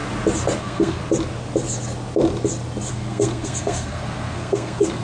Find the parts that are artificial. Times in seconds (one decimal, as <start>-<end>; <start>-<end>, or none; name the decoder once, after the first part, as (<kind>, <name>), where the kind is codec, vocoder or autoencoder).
0.6-1.0 (codec, SNAC); 2.9-5.0